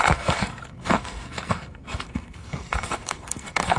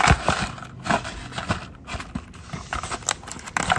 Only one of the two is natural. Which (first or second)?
second